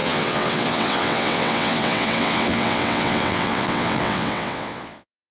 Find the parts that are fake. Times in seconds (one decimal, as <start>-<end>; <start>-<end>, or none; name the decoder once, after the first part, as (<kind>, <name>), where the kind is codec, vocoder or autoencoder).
0.0-5.3 (vocoder, WaveNeXt)

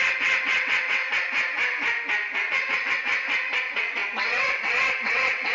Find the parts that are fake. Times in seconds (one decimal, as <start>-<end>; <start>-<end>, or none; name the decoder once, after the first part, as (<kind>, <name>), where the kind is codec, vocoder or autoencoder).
0.0-1.0 (vocoder, WaveNeXt); 2.5-3.1; 3.6-5.5

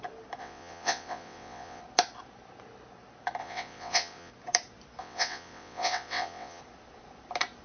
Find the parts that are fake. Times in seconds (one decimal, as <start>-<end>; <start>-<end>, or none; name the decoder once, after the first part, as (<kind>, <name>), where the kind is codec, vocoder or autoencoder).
0.4-1.8 (vocoder, WaveNeXt); 3.4-4.3; 5.0-6.6